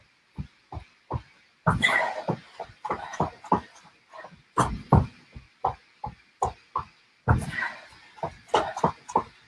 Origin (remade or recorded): recorded